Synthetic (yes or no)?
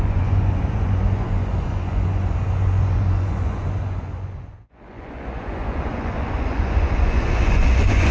yes